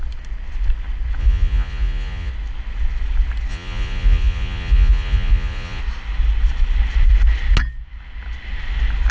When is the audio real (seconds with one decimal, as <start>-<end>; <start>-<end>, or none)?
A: 0.0-1.2; 2.3-3.5; 5.8-9.1